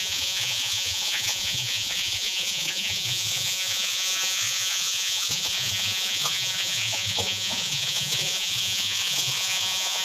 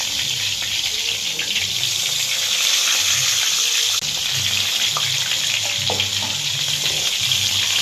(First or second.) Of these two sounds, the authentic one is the second